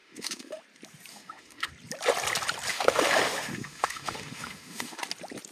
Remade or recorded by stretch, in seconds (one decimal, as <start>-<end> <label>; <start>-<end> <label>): 0.0-0.6 remade; 0.6-1.1 recorded; 1.1-1.7 remade; 1.7-2.7 recorded; 2.7-5.0 remade; 5.0-5.5 recorded